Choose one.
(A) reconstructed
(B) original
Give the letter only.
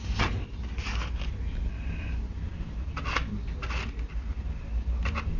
B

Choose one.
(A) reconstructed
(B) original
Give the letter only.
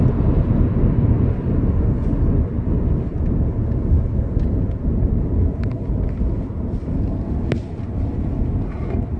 B